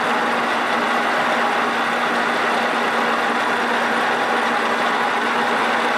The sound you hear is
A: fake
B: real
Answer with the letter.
B